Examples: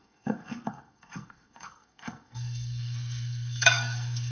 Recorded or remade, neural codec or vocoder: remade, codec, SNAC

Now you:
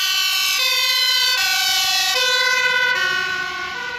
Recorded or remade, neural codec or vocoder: remade, vocoder, BigVGAN v2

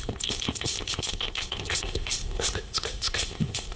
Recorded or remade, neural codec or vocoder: remade, codec, ZipCodec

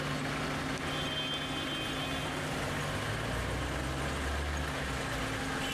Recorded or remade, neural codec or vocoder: recorded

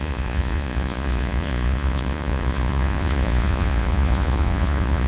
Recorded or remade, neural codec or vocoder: remade, vocoder, Vocos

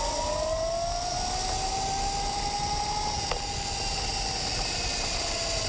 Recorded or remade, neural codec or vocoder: recorded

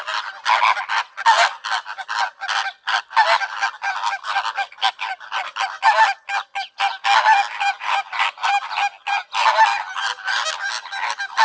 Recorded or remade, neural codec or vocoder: recorded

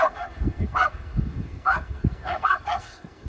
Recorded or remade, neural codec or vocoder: remade, codec, SNAC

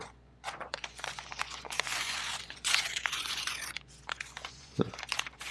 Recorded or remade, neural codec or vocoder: remade, vocoder, Vocos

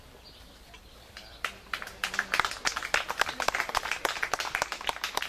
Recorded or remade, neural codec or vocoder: recorded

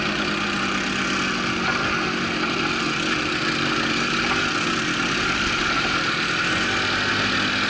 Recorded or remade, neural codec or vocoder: recorded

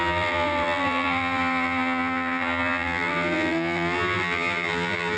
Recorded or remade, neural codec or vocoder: remade, vocoder, BigVGAN v2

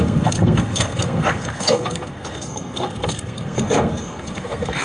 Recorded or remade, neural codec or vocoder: remade, codec, SNAC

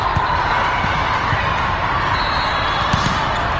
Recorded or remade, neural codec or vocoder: recorded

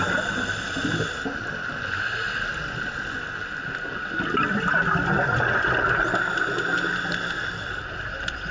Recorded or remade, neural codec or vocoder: recorded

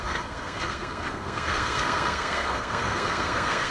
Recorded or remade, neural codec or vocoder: remade, codec, SNAC